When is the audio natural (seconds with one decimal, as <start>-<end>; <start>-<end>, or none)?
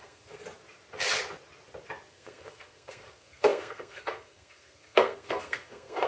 0.4-2.1